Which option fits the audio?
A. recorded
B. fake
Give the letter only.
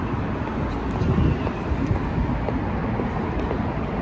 A